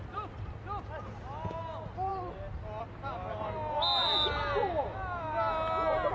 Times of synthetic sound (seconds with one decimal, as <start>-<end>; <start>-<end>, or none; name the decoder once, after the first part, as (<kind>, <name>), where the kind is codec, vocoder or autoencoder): none